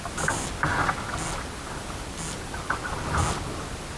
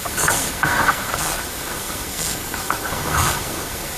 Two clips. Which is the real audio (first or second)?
first